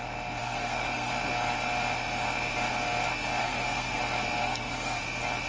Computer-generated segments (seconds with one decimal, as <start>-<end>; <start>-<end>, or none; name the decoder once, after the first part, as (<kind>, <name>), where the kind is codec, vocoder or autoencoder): 0.4-1.1 (codec, SNAC); 3.4-4.0; 4.4-5.0